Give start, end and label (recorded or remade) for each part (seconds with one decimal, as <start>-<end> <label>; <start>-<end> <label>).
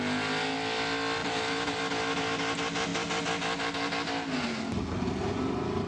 0.0-1.2 recorded; 1.2-1.8 remade; 1.8-5.9 recorded